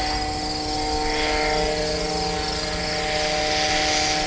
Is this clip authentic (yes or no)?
yes